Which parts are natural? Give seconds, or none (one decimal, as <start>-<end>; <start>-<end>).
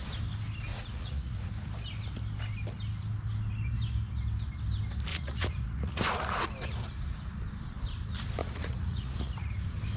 0.0-0.7; 1.5-5.1; 6.0-8.4; 9.5-10.0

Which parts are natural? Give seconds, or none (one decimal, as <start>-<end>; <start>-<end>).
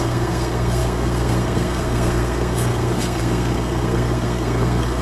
none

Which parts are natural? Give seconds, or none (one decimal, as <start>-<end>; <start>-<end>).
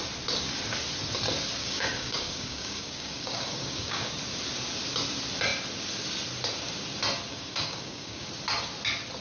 0.0-1.6; 4.1-7.3; 8.3-9.2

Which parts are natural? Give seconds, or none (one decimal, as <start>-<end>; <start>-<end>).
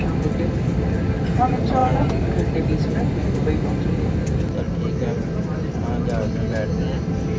0.0-7.4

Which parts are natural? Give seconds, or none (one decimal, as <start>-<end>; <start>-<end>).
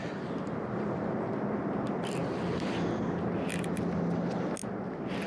0.0-5.3